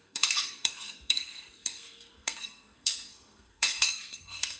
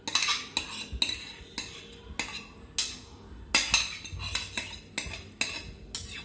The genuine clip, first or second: second